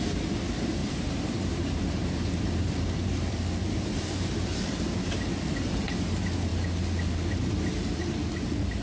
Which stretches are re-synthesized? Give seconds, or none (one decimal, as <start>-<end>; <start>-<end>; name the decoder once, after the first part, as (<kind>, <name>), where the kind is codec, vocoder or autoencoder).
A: 0.8-4.8 (vocoder, BigVGAN v2)